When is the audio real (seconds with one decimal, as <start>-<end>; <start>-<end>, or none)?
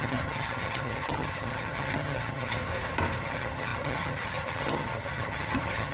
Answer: 2.6-3.2